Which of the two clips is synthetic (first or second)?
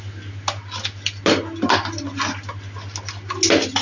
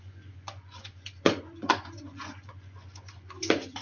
second